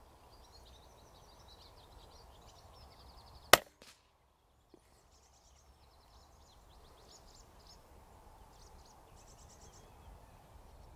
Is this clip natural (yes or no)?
yes